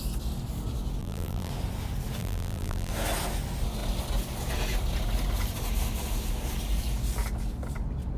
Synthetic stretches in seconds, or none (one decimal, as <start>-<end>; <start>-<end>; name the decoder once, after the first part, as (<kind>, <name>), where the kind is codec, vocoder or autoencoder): 1.0-1.5 (vocoder, BigVGAN v2); 2.2-2.9